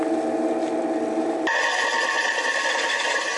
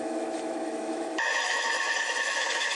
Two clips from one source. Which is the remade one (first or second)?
second